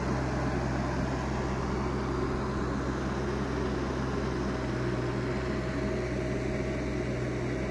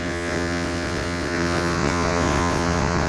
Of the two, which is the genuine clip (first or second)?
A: first